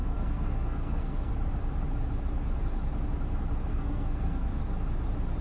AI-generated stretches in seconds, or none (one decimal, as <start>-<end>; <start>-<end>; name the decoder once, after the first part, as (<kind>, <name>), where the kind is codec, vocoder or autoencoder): 0.0-1.3 (codec, SNAC); 3.7-4.6